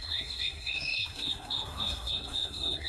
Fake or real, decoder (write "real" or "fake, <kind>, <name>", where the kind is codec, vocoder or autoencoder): fake, codec, SNAC